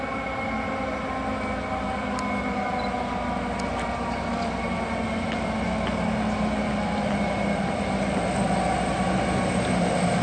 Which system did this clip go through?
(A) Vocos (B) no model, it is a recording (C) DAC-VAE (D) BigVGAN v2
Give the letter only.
B